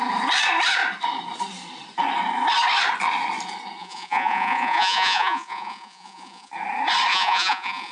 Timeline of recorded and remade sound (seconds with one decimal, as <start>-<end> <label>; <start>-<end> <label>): 0.0-3.8 recorded; 3.8-6.5 remade; 6.5-7.1 recorded; 7.1-7.9 remade